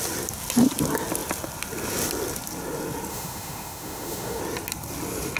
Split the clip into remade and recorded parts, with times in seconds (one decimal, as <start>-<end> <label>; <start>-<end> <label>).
0.0-3.1 recorded; 3.1-4.4 remade; 4.4-5.4 recorded